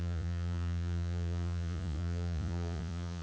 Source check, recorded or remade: remade